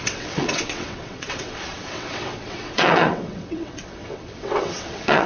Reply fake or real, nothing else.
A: fake